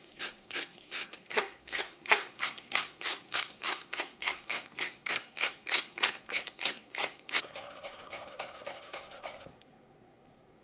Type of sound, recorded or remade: remade